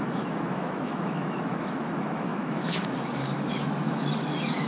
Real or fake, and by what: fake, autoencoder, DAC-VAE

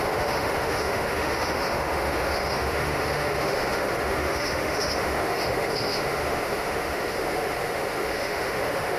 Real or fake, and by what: fake, autoencoder, DAC-VAE